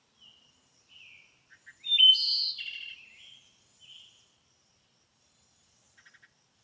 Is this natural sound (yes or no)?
yes